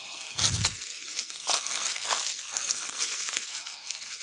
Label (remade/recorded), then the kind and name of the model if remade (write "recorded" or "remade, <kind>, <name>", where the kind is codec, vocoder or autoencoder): remade, codec, SNAC